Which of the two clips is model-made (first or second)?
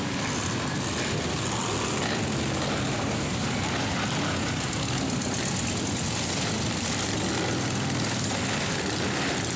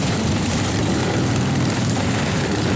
second